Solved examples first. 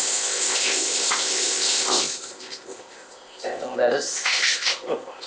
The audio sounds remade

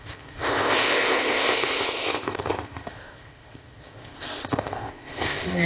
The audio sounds remade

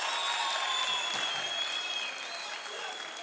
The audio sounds recorded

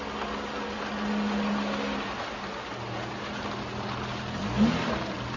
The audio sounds recorded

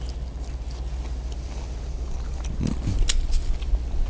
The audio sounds recorded